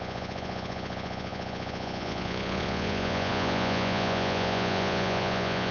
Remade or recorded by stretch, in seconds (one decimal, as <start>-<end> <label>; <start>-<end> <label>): 0.0-5.7 remade